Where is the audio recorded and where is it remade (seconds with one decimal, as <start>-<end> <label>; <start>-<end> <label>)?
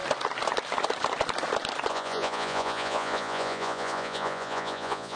0.0-1.9 recorded; 1.9-5.2 remade